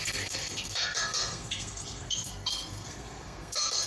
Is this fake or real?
fake